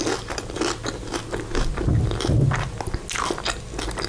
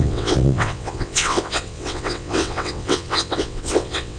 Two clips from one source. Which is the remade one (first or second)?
second